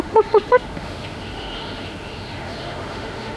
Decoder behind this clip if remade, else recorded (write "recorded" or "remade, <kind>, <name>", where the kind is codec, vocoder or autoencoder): remade, autoencoder, DAC-VAE